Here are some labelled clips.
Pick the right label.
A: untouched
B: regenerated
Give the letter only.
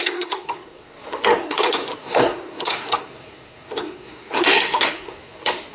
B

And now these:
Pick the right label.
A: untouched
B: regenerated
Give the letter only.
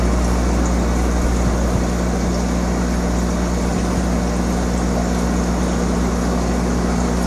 A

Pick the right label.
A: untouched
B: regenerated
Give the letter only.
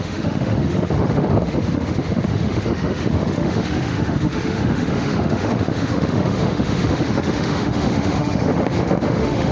B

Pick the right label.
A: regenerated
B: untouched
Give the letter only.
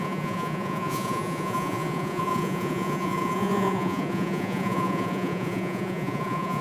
A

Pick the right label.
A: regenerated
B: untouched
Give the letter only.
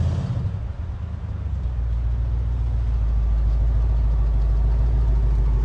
B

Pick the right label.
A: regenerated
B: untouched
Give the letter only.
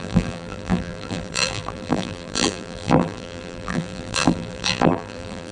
A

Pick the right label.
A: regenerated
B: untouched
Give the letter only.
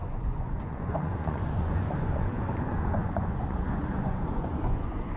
A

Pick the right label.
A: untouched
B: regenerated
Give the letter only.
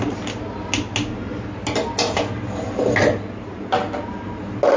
A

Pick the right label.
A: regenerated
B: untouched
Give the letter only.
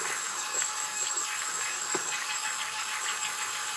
A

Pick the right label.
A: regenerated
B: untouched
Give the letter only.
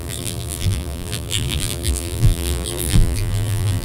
A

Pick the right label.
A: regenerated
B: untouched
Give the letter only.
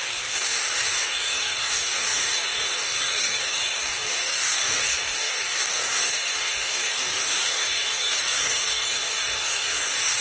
A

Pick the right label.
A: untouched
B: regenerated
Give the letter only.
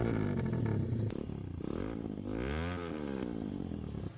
A